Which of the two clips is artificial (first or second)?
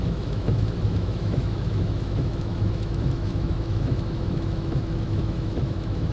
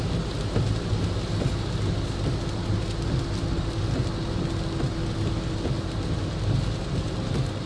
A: first